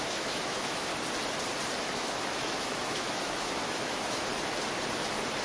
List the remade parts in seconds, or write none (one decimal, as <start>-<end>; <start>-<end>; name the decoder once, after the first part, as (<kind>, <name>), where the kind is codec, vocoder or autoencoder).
0.0-0.9 (autoencoder, DAC-VAE); 2.0-4.3